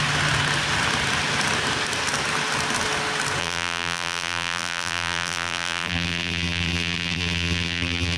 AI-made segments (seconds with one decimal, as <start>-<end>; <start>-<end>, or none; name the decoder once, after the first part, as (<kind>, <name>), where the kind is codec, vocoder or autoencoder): 3.4-8.2 (vocoder, BigVGAN v2)